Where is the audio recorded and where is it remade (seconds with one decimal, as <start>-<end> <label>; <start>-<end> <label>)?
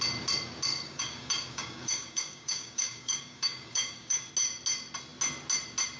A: 0.0-0.7 recorded; 0.7-4.3 remade; 4.3-6.0 recorded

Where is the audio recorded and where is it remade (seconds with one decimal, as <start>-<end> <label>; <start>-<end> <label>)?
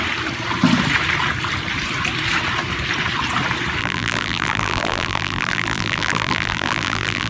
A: 0.0-3.8 recorded; 3.8-7.3 remade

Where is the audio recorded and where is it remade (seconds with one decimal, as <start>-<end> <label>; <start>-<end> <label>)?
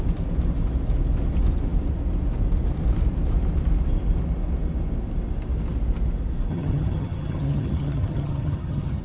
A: 0.0-6.5 recorded; 6.5-9.0 remade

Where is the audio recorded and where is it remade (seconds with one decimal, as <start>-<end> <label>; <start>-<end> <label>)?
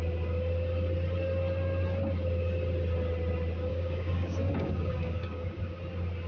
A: 0.0-3.7 recorded; 3.7-5.6 remade; 5.6-6.3 recorded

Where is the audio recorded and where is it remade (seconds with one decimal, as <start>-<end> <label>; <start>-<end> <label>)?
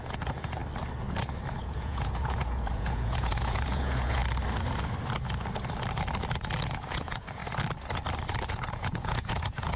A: 0.0-0.6 remade; 0.6-1.6 recorded; 1.6-4.2 remade; 4.2-6.6 recorded; 6.6-7.4 remade; 7.4-8.5 recorded; 8.5-9.8 remade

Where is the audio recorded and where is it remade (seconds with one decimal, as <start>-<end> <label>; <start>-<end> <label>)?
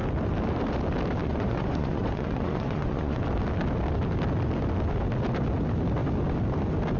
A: 0.0-1.2 recorded; 1.2-3.2 remade; 3.2-7.0 recorded